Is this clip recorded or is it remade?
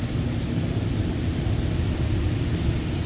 recorded